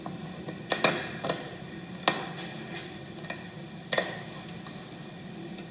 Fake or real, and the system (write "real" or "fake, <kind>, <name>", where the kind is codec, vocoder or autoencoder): real